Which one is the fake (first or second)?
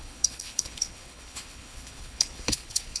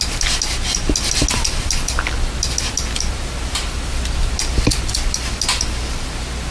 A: first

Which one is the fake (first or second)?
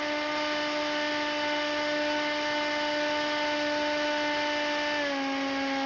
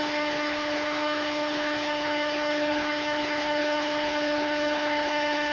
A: second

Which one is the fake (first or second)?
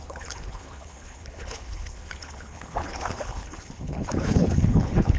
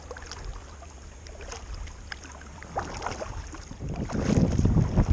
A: first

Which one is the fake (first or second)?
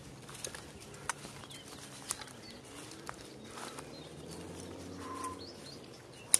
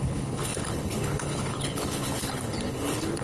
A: second